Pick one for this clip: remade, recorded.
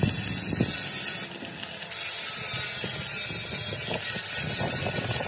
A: recorded